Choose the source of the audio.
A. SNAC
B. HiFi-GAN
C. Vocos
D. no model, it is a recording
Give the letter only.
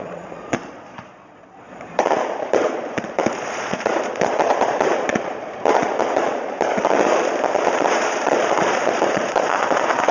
C